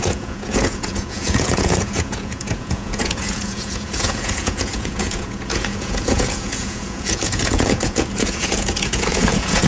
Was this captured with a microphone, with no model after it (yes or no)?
no